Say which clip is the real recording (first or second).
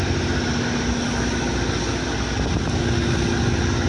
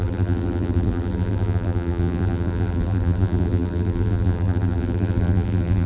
first